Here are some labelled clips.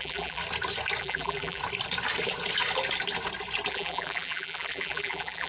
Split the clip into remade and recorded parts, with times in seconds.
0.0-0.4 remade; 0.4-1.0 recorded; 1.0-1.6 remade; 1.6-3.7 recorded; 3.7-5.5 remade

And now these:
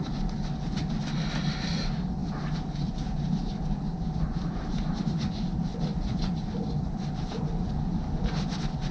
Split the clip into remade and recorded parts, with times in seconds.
0.0-8.9 recorded

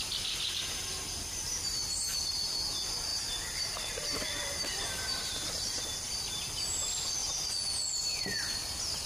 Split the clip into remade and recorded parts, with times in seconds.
0.0-3.1 recorded; 3.1-6.3 remade; 6.3-9.1 recorded

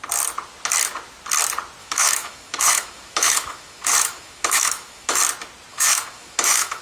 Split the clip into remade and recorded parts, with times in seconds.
0.0-1.8 recorded; 1.8-5.2 remade; 5.2-5.7 recorded; 5.7-6.8 remade

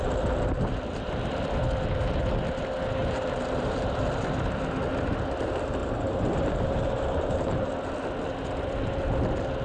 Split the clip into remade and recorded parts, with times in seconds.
0.0-3.0 recorded; 3.0-4.2 remade; 4.2-5.8 recorded; 5.8-7.7 remade; 7.7-9.6 recorded

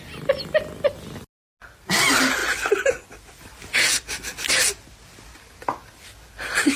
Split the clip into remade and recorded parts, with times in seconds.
0.0-6.8 recorded

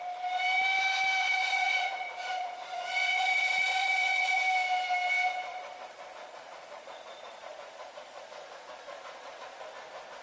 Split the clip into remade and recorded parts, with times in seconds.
0.0-1.2 recorded; 1.2-4.4 remade; 4.4-5.5 recorded; 5.5-9.6 remade; 9.6-10.2 recorded

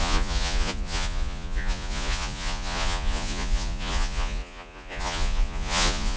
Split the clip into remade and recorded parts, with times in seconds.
0.0-6.2 remade